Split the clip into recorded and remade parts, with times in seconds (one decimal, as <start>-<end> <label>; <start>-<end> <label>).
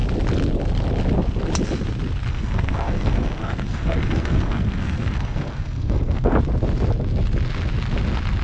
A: 0.0-2.3 recorded; 2.3-6.4 remade; 6.4-8.4 recorded